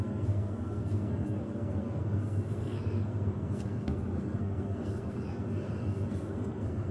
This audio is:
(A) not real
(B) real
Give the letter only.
A